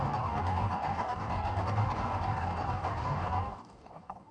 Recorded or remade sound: remade